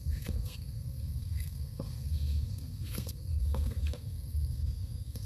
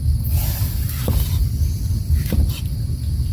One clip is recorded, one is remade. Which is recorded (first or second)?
second